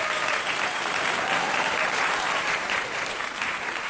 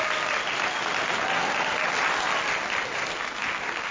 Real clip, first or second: second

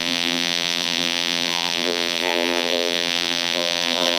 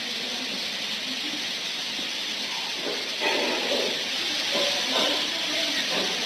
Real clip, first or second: second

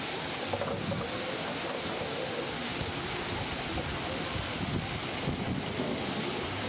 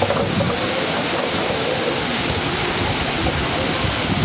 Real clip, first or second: first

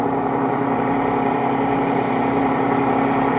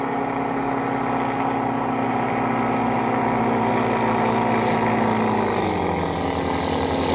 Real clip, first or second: second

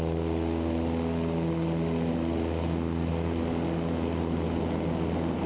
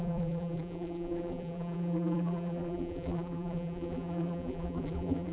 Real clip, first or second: first